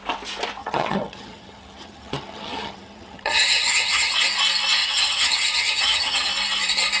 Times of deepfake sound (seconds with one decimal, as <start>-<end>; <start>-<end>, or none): 0.6-4.1; 4.8-6.3